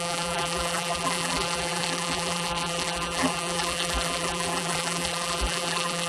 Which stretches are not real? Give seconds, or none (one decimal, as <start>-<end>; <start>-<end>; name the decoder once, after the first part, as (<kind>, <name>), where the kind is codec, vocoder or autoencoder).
0.0-6.1 (vocoder, BigVGAN v2)